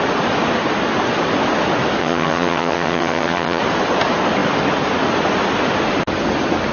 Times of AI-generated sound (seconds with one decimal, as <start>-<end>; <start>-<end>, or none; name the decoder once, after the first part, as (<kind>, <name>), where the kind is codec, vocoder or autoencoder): 2.0-3.6 (vocoder, HiFi-GAN)